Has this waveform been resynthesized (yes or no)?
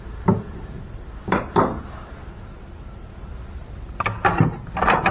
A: no